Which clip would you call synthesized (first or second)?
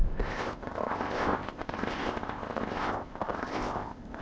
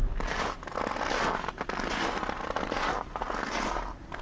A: first